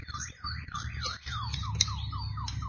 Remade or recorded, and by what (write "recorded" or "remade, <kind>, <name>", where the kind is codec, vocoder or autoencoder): recorded